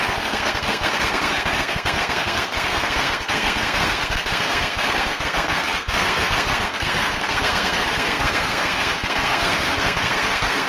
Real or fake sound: fake